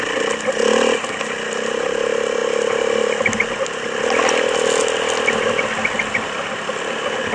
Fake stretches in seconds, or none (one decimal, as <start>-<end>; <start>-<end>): none